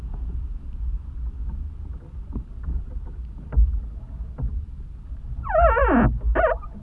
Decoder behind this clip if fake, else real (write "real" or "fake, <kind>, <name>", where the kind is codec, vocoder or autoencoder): real